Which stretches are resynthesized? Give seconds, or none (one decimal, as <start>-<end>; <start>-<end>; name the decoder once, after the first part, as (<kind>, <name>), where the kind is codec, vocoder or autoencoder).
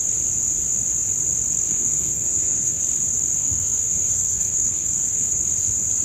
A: 1.7-2.8 (codec, SNAC); 3.4-5.4